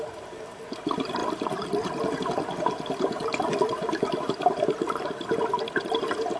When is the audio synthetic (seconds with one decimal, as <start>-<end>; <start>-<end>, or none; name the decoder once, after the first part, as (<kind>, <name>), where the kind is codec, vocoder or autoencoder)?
1.2-5.0 (vocoder, BigVGAN v2)